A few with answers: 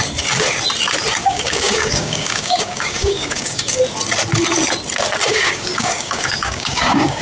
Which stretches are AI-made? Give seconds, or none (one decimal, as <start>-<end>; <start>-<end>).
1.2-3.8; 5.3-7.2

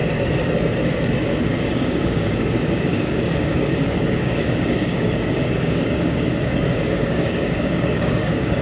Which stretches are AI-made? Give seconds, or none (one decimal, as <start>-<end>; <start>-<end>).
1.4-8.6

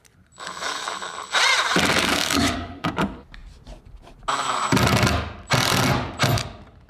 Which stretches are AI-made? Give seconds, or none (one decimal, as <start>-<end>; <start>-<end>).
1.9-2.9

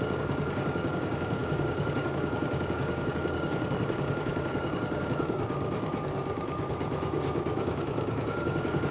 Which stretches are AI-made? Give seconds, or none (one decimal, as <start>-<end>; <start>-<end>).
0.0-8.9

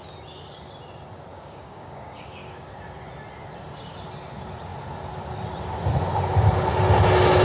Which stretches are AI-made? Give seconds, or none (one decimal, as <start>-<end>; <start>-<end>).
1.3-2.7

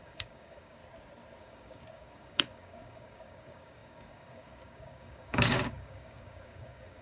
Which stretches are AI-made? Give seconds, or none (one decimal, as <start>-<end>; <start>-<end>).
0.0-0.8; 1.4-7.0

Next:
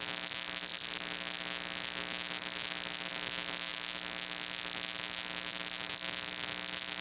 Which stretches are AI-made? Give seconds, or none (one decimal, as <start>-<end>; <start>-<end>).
none

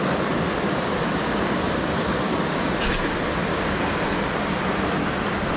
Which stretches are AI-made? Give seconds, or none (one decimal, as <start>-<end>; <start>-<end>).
3.5-4.0